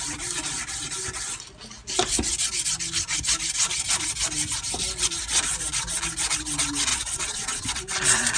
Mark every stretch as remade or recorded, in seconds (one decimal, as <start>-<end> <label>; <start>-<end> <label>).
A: 0.0-6.9 recorded; 6.9-7.8 remade; 7.8-8.4 recorded